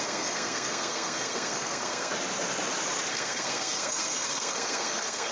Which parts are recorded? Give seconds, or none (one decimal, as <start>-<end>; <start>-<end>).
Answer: 2.1-3.1

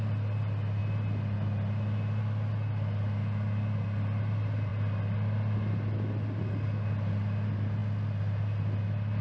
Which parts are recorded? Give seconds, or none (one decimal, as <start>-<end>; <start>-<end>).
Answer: 0.0-9.2

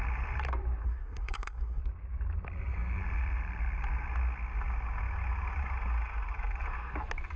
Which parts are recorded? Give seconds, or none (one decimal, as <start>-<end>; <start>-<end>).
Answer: 0.0-0.8; 1.8-7.4

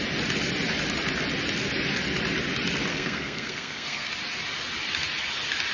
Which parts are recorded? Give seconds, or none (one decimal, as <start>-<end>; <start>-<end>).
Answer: 0.0-2.9; 4.1-5.7

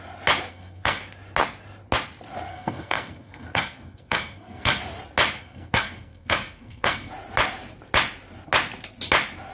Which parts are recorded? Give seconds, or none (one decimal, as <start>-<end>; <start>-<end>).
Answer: 0.0-0.5; 1.0-2.5; 4.8-5.4; 7.1-9.5

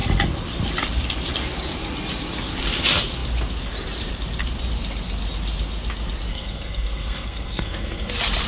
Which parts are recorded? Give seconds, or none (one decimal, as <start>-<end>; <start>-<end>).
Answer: 0.0-6.3; 8.1-8.5

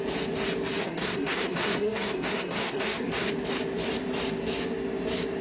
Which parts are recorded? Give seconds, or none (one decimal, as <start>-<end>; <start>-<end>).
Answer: 0.0-0.8; 3.3-5.4